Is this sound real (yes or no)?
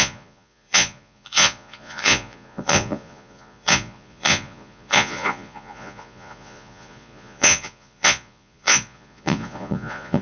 no